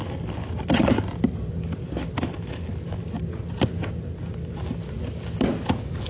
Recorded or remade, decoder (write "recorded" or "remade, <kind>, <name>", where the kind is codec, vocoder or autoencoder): recorded